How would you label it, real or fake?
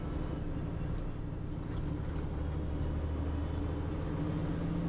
real